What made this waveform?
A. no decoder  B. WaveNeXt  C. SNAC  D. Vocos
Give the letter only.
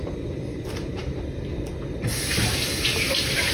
A